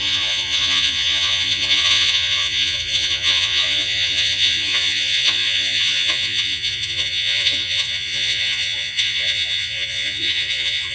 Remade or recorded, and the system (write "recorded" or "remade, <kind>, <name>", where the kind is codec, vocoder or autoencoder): remade, vocoder, Vocos